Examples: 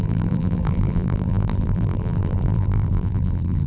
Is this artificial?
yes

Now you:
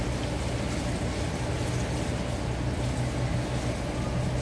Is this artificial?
no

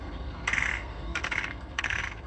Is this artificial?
yes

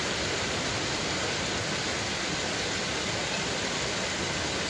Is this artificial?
no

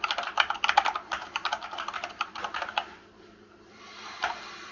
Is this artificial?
no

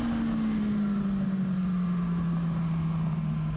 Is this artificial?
no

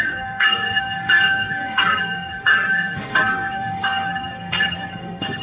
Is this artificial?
yes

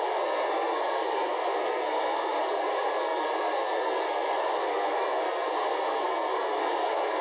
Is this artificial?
yes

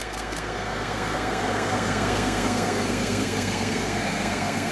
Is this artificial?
yes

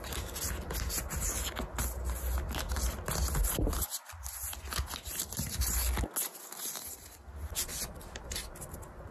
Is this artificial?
no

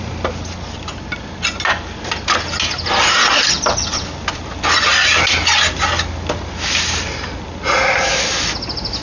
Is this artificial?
no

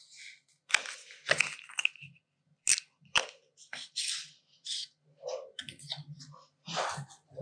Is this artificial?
no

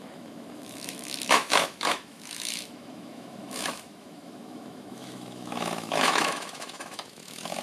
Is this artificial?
yes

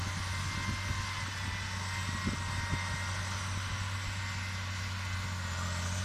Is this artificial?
no